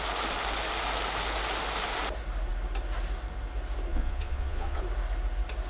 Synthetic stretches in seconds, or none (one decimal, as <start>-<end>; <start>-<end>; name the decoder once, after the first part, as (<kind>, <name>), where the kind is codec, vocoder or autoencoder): 3.9-4.8 (vocoder, Vocos)